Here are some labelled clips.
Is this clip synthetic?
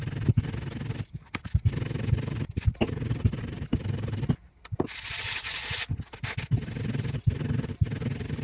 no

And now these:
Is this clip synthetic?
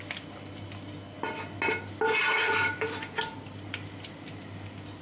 no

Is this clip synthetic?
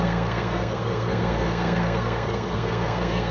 yes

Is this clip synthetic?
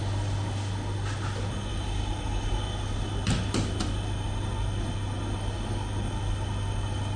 no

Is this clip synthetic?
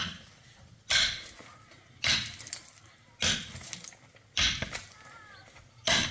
no